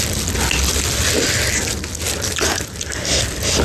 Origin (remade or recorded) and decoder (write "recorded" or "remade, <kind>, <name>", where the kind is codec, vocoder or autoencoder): recorded